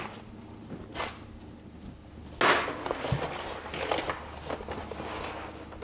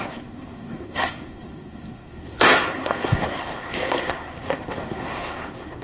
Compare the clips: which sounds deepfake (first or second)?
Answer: second